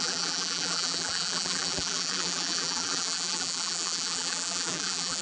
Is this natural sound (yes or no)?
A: no